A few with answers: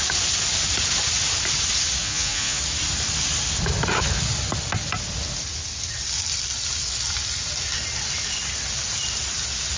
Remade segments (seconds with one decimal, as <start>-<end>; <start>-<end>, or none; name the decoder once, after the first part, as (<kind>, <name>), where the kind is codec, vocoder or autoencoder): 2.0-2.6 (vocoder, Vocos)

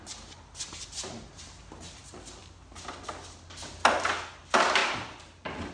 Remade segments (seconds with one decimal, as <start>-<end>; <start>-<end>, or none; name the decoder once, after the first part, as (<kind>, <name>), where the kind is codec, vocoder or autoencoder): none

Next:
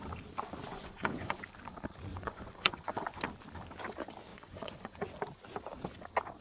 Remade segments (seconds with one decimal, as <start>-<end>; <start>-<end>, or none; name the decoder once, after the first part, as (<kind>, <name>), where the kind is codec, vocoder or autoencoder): 0.8-1.4 (vocoder, Vocos); 2.1-3.2; 4.3-5.1